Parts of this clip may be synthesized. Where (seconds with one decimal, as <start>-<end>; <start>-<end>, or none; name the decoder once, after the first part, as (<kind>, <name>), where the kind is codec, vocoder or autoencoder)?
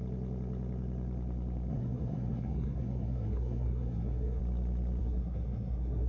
1.7-4.4 (codec, SNAC); 5.0-6.1